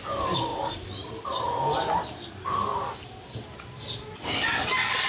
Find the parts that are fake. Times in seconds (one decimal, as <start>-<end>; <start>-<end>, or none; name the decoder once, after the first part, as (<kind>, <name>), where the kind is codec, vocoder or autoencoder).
none